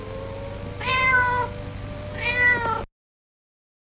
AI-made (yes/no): no